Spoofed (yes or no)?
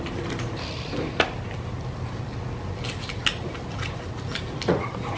no